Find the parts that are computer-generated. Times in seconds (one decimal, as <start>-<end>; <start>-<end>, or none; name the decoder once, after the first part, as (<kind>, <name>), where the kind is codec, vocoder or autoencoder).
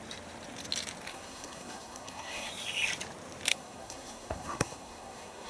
1.1-2.5 (codec, SNAC); 3.5-5.5